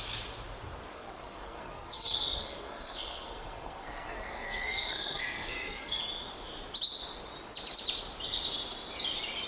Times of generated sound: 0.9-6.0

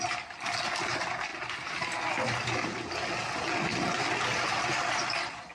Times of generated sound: none

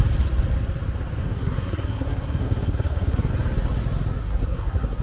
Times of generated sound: 1.2-3.3; 4.2-5.0

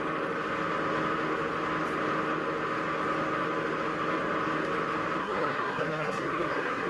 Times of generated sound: 5.2-6.9

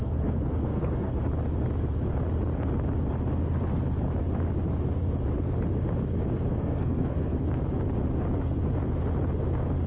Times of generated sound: 0.0-1.1; 6.5-7.4